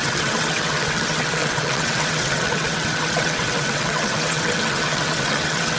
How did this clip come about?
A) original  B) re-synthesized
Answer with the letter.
B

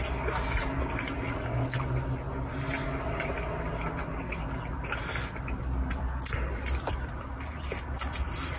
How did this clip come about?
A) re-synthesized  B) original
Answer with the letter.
B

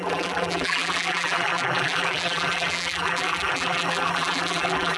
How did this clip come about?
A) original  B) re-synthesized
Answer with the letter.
B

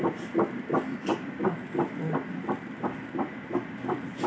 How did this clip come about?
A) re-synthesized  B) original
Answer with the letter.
B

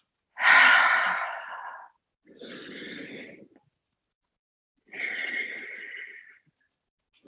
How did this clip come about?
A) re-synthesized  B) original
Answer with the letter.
B